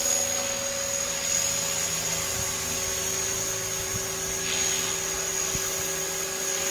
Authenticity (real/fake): real